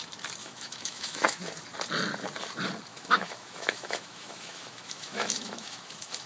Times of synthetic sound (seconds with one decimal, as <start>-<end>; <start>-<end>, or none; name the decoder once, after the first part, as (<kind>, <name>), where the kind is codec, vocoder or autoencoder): 0.4-1.4 (autoencoder, DAC-VAE); 2.9-6.3